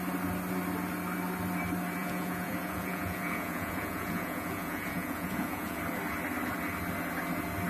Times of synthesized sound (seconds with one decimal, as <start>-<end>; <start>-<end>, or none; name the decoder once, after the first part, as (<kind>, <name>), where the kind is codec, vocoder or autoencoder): 2.0-5.8 (vocoder, Vocos)